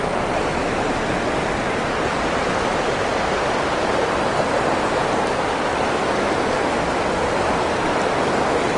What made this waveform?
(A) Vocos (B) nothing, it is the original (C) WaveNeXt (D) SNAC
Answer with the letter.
B